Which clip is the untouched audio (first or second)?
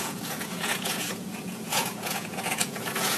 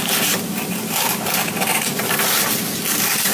second